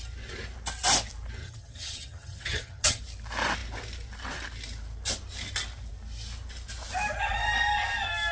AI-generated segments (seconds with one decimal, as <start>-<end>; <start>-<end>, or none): 1.4-3.0